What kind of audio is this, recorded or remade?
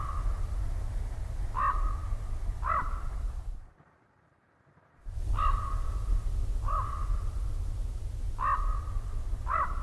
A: recorded